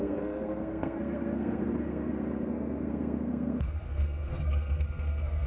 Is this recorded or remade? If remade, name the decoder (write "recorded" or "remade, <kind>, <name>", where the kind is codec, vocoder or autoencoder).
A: remade, codec, SNAC